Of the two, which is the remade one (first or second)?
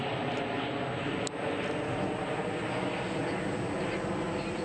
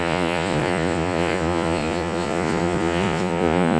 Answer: second